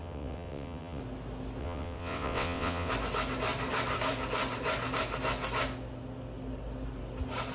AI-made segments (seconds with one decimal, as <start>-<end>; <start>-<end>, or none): 0.0-1.0; 1.6-2.9